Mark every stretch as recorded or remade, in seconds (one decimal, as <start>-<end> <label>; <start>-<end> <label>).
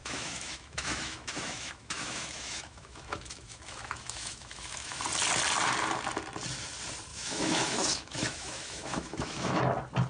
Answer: 0.0-5.0 remade; 5.0-7.1 recorded; 7.1-9.6 remade; 9.6-10.1 recorded